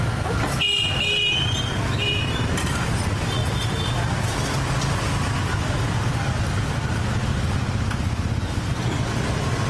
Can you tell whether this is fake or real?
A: real